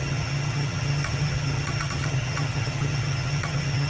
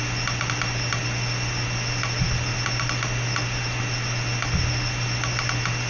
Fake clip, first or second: first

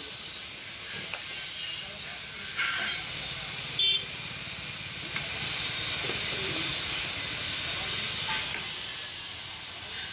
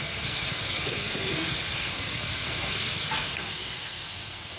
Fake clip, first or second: second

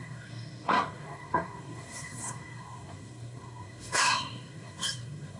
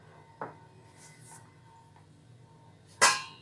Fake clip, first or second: first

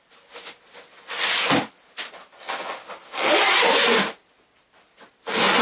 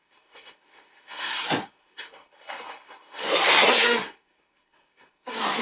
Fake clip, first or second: second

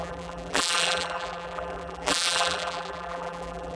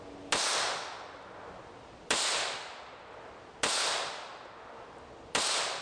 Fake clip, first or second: first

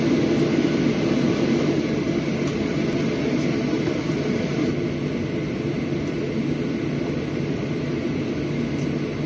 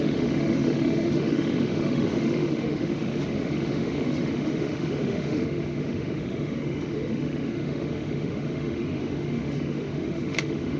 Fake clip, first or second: second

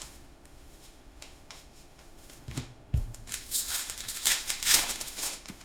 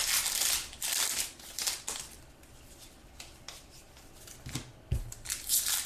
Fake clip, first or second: first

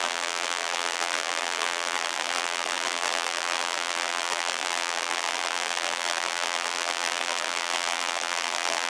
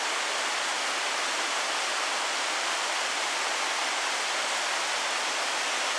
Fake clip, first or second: first